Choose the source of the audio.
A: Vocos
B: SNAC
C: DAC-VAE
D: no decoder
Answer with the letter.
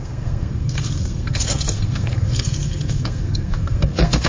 B